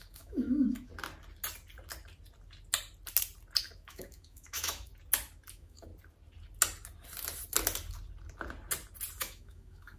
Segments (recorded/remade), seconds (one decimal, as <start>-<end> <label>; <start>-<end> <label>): 0.0-0.9 remade; 0.9-3.6 recorded; 3.6-4.9 remade; 4.9-5.5 recorded; 5.5-5.9 remade; 5.9-9.2 recorded; 9.2-10.0 remade